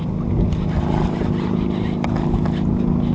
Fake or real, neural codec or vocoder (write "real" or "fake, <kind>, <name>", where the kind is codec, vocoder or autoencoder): real